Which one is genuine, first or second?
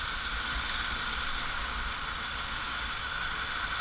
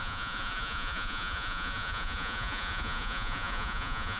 first